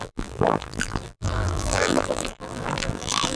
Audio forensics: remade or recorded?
remade